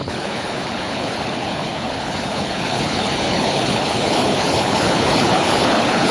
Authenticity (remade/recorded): remade